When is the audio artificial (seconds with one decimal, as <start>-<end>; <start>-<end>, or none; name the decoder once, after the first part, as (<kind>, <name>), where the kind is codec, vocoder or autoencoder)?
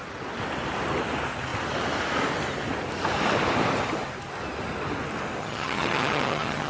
5.4-6.7 (vocoder, HiFi-GAN)